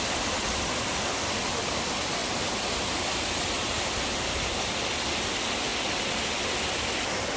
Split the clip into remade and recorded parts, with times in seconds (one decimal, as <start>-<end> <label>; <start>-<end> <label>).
0.0-7.4 recorded